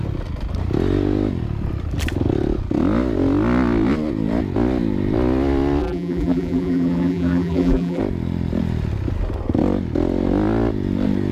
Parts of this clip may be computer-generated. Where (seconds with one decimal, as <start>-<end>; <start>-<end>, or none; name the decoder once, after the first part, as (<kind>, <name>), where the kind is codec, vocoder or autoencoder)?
5.8-8.0 (vocoder, BigVGAN v2)